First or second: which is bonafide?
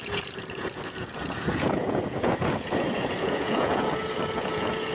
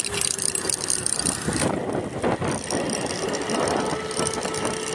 second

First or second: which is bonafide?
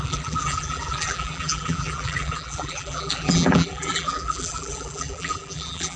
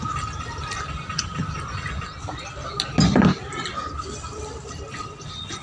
second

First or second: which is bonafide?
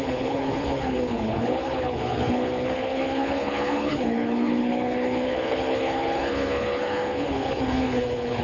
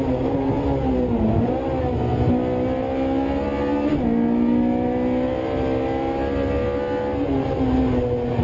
second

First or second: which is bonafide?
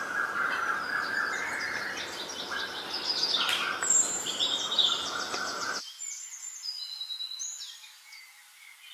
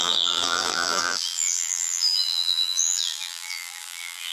first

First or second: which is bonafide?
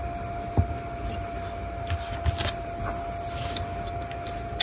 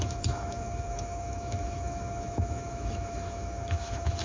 first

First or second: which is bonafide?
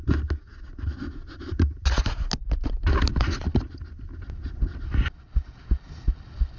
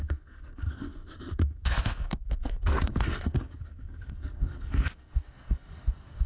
first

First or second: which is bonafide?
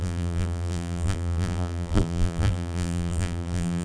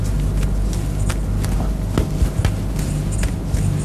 second